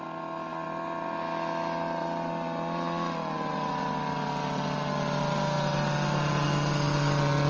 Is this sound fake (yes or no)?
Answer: no